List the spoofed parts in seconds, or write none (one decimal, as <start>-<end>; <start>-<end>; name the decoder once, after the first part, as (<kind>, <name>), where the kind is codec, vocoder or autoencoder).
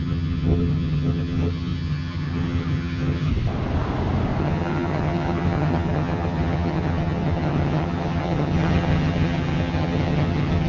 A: 0.0-3.3 (vocoder, HiFi-GAN); 4.4-10.7